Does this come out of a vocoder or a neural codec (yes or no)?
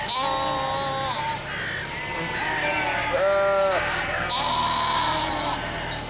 no